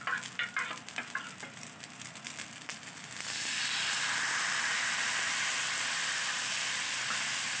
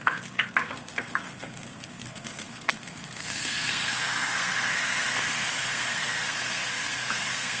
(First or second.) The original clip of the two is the first